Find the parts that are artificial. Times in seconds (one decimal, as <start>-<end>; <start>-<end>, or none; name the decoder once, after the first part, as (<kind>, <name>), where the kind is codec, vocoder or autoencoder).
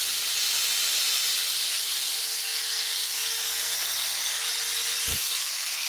1.7-4.4 (codec, SNAC); 5.1-5.9